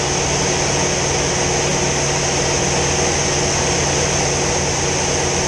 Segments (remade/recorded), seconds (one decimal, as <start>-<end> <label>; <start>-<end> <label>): 0.0-5.5 recorded